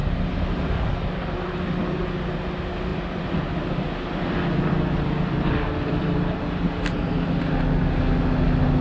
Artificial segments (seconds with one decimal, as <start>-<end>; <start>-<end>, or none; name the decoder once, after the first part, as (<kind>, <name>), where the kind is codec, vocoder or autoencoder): 2.9-7.6 (vocoder, BigVGAN v2)